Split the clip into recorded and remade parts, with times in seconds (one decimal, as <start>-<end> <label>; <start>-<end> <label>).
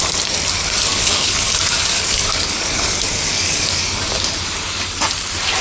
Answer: 0.0-0.9 recorded; 0.9-4.3 remade; 4.3-5.6 recorded